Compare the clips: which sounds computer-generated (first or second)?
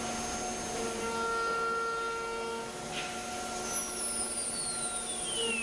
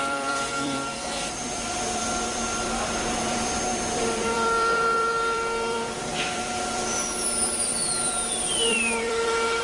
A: second